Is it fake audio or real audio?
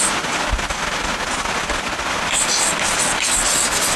real